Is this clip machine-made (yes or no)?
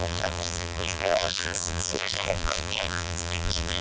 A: yes